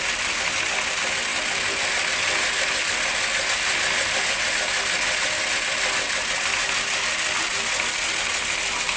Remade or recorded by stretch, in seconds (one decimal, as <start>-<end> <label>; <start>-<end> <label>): 0.0-9.0 recorded